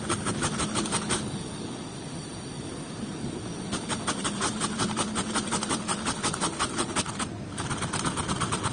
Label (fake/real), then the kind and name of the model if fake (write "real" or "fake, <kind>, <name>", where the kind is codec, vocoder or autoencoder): real